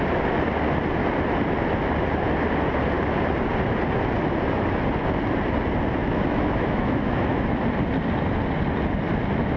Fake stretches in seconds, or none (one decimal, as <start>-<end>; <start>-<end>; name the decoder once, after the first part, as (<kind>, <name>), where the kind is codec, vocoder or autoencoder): 6.0-7.5 (autoencoder, DAC-VAE)